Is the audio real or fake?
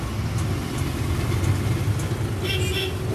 real